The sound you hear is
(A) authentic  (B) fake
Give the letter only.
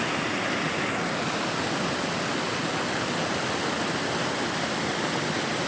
A